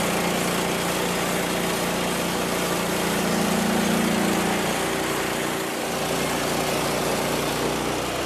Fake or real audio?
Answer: real